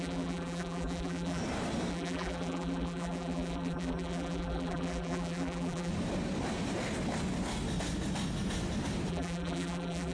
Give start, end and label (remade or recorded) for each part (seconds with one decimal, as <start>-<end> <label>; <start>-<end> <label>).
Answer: 0.0-1.4 remade; 1.4-1.9 recorded; 1.9-5.9 remade; 5.9-9.1 recorded; 9.1-10.1 remade